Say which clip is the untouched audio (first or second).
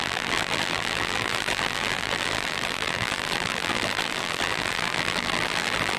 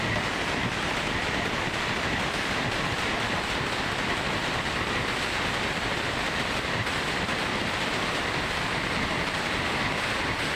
second